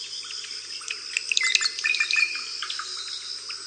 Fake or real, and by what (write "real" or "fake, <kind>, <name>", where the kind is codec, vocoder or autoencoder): real